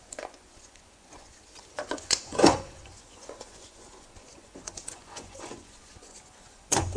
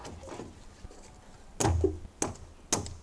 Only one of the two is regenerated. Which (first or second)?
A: first